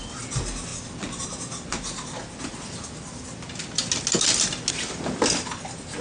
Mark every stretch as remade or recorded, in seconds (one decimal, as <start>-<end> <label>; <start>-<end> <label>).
0.0-6.0 recorded